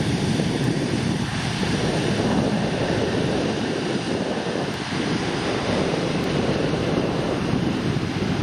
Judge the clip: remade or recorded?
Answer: remade